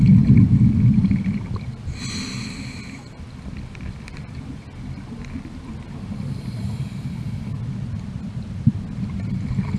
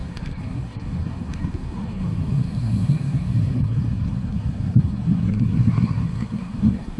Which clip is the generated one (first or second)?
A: second